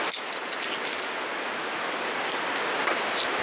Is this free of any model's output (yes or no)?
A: yes